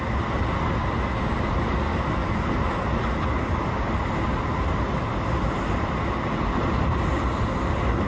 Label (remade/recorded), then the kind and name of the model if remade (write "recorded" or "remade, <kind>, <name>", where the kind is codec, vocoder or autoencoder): recorded